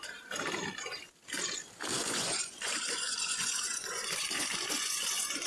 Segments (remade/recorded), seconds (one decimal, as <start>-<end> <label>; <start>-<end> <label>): 0.0-1.9 recorded; 1.9-5.5 remade